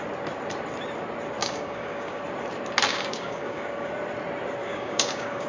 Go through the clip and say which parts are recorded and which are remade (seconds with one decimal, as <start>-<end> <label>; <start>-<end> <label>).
0.0-1.4 recorded; 1.4-2.2 remade; 2.2-2.9 recorded; 2.9-3.9 remade; 3.9-4.6 recorded; 4.6-5.5 remade